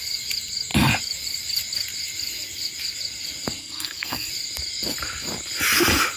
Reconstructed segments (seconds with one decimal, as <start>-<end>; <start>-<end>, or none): 3.6-4.3